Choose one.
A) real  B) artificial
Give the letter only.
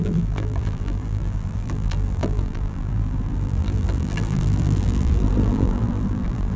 B